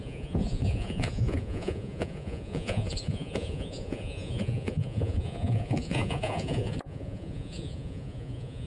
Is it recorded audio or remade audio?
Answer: remade